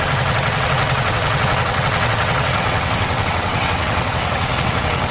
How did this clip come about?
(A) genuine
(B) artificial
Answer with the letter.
B